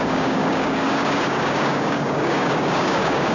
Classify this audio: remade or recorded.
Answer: remade